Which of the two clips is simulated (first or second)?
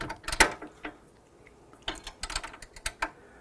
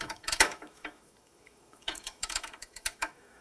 second